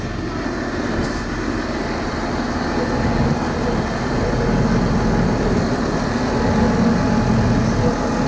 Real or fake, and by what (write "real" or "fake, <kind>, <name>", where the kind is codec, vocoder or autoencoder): real